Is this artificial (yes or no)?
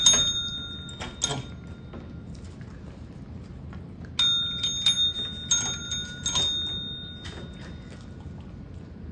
no